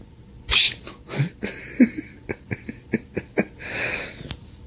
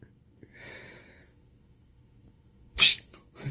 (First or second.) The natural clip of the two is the first